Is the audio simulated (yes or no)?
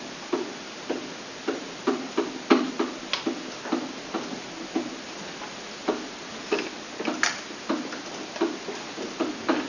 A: no